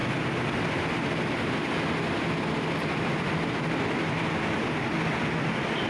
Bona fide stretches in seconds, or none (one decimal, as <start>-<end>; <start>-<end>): 0.0-5.9